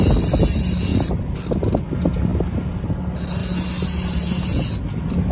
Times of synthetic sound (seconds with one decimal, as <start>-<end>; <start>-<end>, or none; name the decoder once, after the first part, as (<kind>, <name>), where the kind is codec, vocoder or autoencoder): 0.9-1.9 (vocoder, BigVGAN v2); 2.3-2.9